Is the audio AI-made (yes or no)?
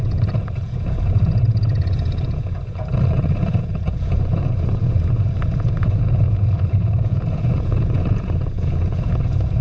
yes